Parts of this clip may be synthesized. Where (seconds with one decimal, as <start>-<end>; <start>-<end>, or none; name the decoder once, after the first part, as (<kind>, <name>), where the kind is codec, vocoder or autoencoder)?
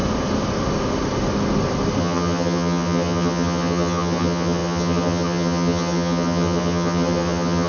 2.0-7.7 (vocoder, HiFi-GAN)